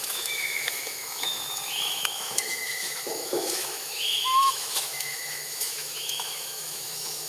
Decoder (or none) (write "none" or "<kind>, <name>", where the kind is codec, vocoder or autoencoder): autoencoder, DAC-VAE